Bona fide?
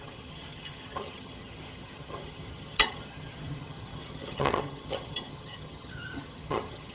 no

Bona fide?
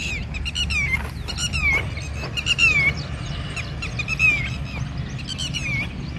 yes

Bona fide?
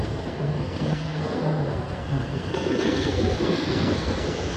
no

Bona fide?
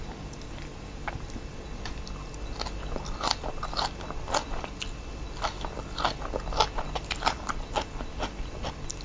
yes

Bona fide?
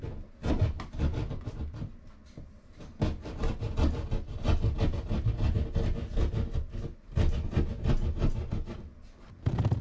yes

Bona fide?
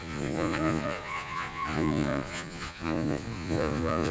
no